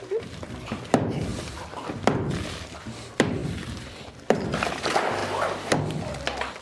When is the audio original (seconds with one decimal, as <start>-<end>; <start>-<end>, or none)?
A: 0.0-1.3; 2.2-3.4; 4.0-6.6